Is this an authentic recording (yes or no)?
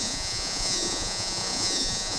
no